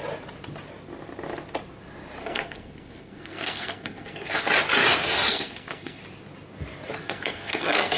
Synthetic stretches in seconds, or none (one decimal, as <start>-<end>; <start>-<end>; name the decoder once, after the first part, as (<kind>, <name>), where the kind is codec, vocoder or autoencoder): 2.2-4.3 (codec, SNAC); 5.3-6.0; 7.0-8.0